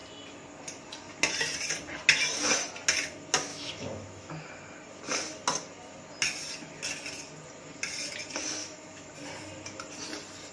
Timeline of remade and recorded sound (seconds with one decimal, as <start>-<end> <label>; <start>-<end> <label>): 0.0-3.5 recorded; 3.5-4.3 remade; 4.3-8.6 recorded; 8.6-9.1 remade; 9.1-10.5 recorded